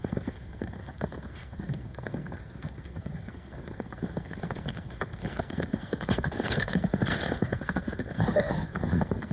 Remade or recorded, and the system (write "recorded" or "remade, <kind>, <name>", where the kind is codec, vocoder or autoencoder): remade, codec, SNAC